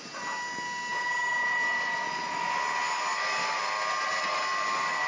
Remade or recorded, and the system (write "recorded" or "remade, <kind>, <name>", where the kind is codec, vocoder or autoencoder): recorded